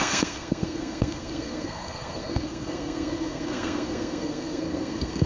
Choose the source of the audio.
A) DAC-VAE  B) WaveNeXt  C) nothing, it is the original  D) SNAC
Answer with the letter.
D